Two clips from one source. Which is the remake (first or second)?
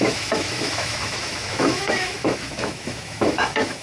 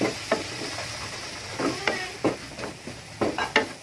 first